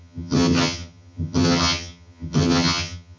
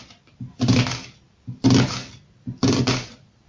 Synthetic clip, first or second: first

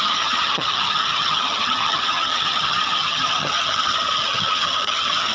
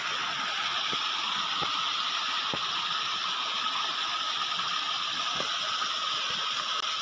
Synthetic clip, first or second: first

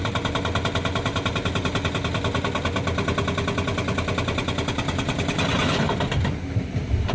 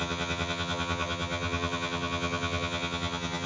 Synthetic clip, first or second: second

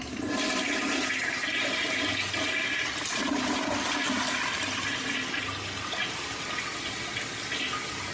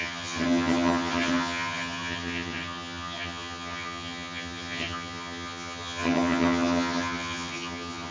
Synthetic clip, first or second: second